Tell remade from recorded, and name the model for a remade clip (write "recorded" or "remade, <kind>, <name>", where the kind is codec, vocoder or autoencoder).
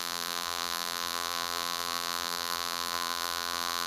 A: remade, vocoder, BigVGAN v2